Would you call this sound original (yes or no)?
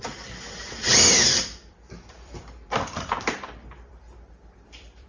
no